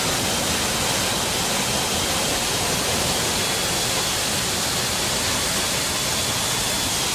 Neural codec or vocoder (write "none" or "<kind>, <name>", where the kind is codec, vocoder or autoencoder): none